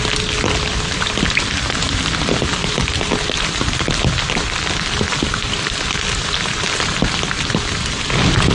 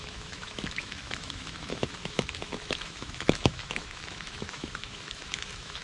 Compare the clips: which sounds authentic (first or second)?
first